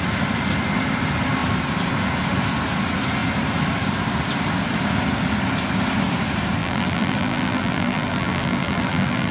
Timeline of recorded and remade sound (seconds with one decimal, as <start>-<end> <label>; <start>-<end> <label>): 0.0-6.6 recorded; 6.6-9.3 remade